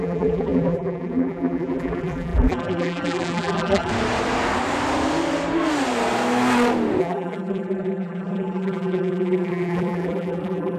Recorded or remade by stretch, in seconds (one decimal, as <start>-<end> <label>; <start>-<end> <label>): 0.0-3.9 remade; 3.9-7.0 recorded; 7.0-10.8 remade